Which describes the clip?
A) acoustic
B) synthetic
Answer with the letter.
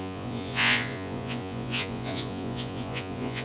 B